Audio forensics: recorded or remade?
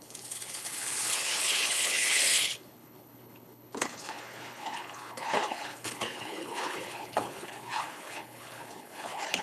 remade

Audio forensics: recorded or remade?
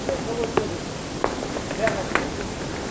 recorded